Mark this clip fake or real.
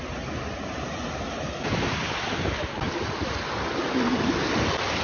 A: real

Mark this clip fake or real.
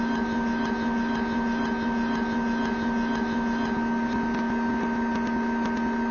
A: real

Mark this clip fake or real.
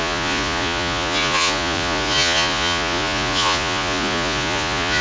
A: fake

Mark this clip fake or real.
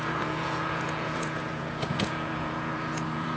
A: fake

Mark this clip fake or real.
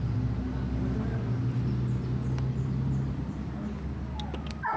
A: real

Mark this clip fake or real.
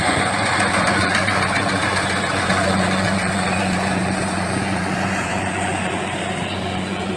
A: fake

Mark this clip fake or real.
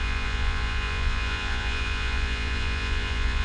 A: fake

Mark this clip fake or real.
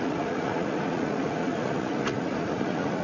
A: fake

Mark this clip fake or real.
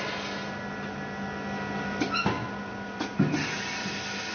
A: real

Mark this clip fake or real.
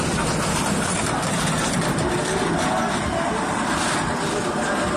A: real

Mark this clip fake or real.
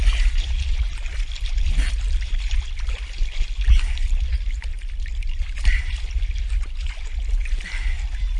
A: real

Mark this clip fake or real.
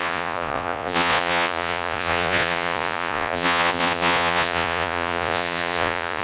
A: fake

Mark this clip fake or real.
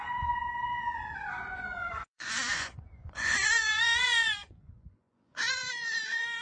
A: fake